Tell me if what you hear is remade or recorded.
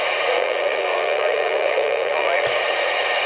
remade